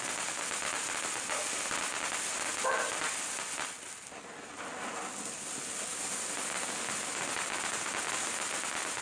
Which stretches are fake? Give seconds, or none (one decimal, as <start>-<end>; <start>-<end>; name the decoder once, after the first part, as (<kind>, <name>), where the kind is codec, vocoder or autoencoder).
none